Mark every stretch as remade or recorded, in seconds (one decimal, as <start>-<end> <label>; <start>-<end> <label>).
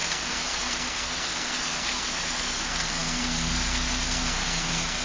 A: 0.0-5.0 remade